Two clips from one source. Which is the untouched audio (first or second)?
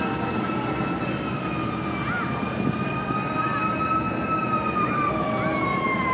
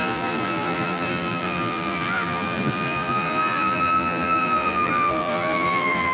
first